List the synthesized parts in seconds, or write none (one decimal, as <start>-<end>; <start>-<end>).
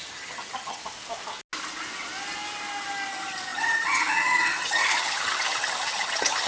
0.0-0.8; 3.1-6.5